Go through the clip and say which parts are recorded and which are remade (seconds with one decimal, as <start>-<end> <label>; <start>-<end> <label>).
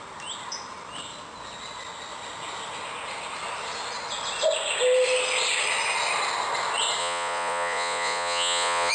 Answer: 0.0-7.0 recorded; 7.0-8.9 remade